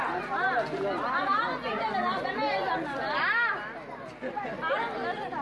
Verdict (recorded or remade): recorded